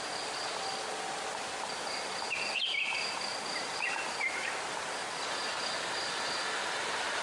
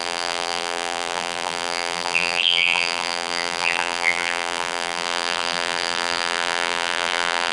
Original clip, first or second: first